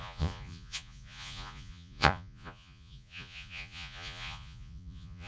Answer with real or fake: fake